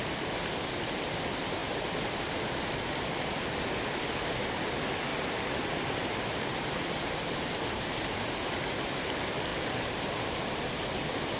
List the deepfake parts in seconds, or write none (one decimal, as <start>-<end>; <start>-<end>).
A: 5.1-8.5; 9.5-10.6